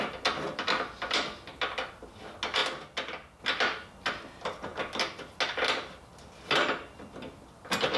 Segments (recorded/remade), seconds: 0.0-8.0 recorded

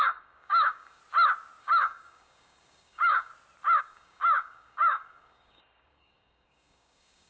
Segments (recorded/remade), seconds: 0.0-1.0 remade; 1.0-1.6 recorded; 1.6-3.3 remade; 3.3-3.8 recorded; 3.8-7.3 remade